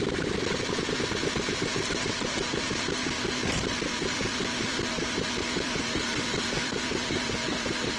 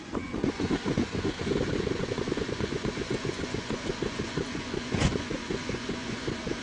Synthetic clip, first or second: second